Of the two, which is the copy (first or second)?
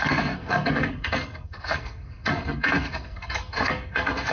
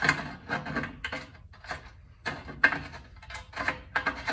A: first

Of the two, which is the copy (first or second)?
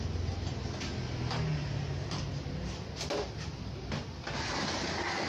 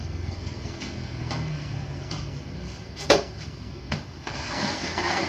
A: second